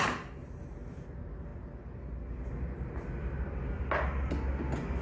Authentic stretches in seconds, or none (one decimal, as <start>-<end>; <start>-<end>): 0.0-5.0